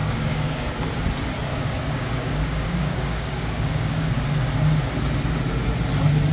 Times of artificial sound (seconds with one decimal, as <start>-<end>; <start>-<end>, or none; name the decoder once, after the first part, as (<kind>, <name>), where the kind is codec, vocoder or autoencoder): 0.0-0.7 (codec, DAC); 1.5-4.1